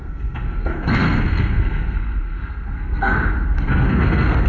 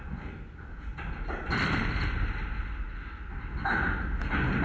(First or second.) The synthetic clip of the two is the first